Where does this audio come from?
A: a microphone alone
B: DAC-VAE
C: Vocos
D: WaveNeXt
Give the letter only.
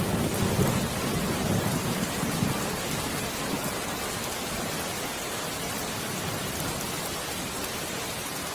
A